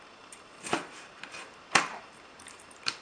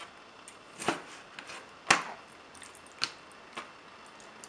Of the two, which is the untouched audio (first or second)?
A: second